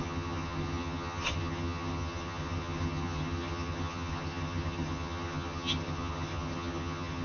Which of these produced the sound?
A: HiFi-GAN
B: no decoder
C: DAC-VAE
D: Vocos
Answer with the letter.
A